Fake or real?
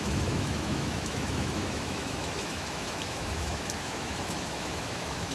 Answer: fake